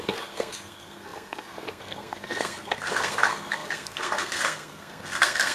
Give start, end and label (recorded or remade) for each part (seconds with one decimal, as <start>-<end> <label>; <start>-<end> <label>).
0.0-5.5 remade